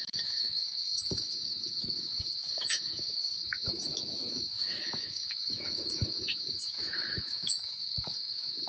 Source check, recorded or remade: remade